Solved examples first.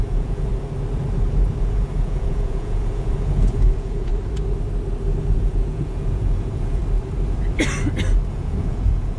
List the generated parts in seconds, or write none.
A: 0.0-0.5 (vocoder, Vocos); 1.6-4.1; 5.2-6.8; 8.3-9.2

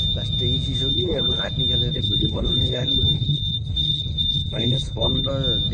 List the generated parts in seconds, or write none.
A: 0.9-1.5 (codec, HILCodec); 1.9-5.3

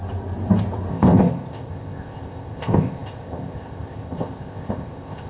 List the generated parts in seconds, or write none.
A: 0.9-5.3 (codec, ZipCodec)

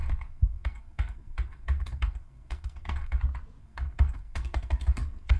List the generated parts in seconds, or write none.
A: 0.0-3.2 (codec, SNAC); 3.6-5.4

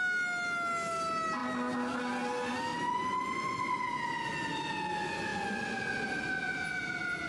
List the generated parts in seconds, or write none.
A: 2.7-3.8 (vocoder, Vocos)